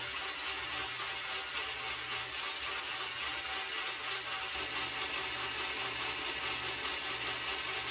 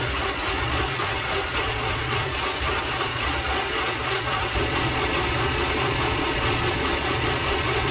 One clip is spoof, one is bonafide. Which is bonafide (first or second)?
first